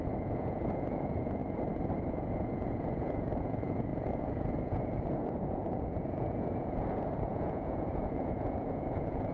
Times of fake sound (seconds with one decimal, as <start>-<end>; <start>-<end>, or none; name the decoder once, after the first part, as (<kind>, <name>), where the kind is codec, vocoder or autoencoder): 0.0-1.4 (vocoder, Vocos); 2.1-9.3